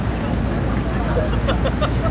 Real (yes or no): yes